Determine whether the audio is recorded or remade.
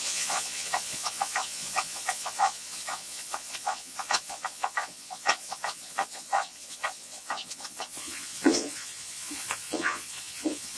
remade